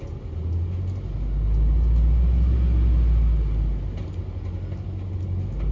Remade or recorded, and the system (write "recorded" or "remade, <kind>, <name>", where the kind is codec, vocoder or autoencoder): recorded